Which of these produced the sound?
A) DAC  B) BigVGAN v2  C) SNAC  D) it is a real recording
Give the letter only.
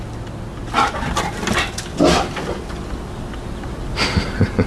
D